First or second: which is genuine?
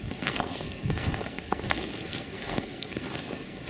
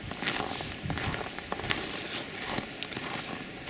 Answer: second